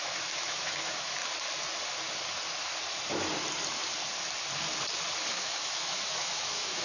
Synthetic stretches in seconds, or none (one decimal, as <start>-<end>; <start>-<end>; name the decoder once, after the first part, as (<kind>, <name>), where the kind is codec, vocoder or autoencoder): 0.0-1.2 (autoencoder, DAC-VAE); 5.3-6.8